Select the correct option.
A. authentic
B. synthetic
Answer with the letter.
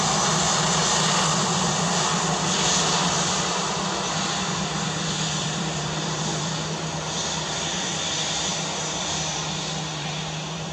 B